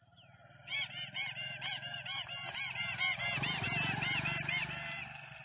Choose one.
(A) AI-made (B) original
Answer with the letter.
B